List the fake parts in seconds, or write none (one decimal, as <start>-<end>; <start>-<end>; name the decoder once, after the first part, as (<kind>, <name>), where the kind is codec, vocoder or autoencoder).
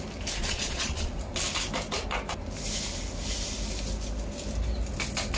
0.4-1.1 (vocoder, Vocos)